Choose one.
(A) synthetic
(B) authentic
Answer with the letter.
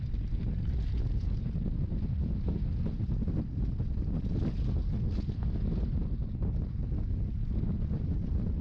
B